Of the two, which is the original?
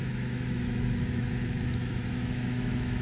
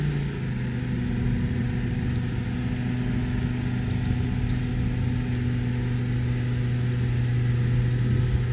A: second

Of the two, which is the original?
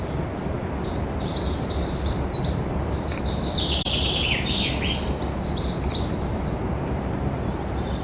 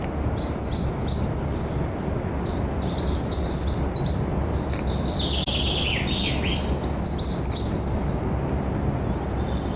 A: second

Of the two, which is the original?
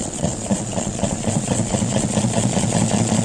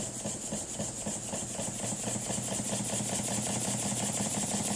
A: second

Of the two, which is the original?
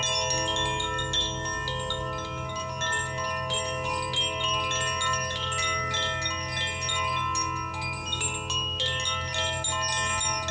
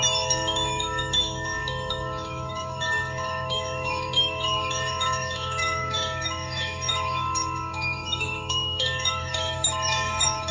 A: first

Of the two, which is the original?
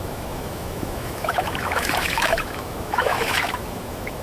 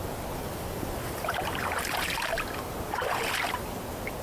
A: second